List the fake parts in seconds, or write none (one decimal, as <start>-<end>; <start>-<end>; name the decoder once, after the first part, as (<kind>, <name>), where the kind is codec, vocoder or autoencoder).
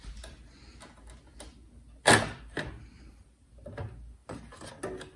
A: 4.2-4.7 (vocoder, BigVGAN v2)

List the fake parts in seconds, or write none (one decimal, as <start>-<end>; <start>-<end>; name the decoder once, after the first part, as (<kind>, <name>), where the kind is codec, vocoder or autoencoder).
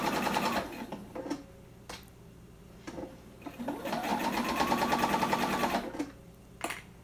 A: none